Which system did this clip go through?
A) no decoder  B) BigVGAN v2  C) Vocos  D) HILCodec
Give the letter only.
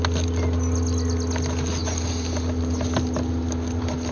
A